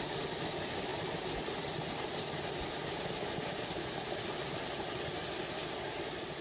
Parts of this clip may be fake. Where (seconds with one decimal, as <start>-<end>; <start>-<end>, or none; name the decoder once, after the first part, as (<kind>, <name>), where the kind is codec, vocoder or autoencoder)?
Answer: none